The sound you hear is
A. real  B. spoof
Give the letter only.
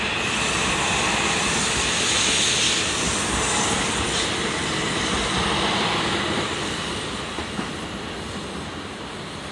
A